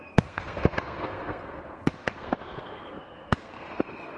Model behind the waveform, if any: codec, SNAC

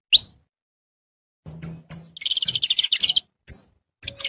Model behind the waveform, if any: none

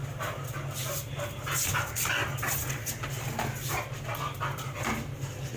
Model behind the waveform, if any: none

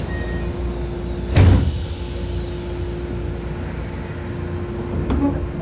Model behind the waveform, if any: none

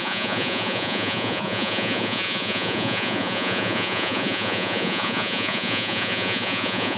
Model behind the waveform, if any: vocoder, Vocos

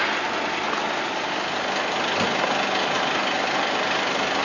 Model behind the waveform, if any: none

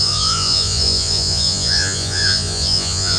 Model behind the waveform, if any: vocoder, Vocos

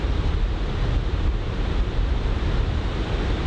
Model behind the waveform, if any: none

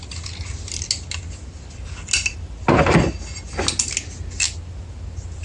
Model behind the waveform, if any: none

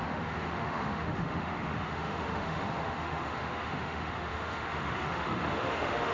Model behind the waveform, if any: autoencoder, DAC-VAE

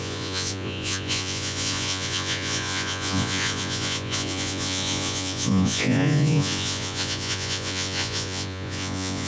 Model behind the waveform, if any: vocoder, Vocos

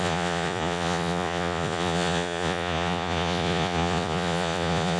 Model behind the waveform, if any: vocoder, Vocos